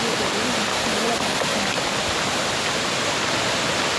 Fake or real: real